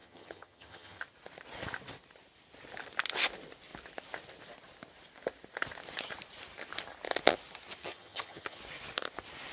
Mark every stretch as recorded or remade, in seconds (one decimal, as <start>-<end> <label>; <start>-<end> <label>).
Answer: 0.0-1.0 remade; 1.0-7.8 recorded; 7.8-8.6 remade; 8.6-9.5 recorded

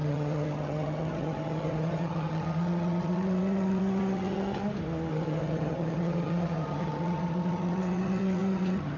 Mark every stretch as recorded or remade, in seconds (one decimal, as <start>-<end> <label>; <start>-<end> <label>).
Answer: 0.0-4.6 remade; 4.6-5.1 recorded; 5.1-9.0 remade

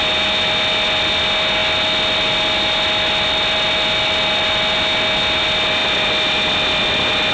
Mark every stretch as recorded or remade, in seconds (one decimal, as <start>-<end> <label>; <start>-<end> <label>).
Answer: 0.0-7.3 recorded

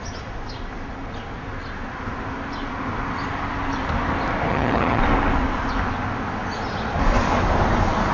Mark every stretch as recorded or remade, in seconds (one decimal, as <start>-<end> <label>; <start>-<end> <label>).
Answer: 0.0-4.5 recorded; 4.5-5.0 remade; 5.0-8.1 recorded

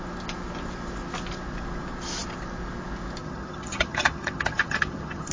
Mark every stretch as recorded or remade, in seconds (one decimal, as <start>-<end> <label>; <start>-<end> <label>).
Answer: 0.0-3.2 recorded; 3.2-5.3 remade

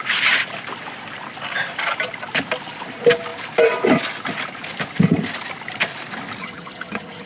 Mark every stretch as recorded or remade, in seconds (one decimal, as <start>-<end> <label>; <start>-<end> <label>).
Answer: 0.0-6.4 recorded; 6.4-7.3 remade